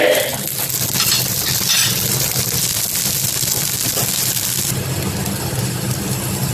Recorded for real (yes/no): yes